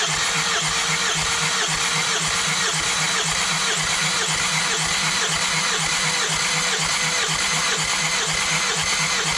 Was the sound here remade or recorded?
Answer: recorded